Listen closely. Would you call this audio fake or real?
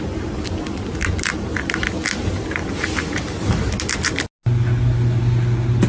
real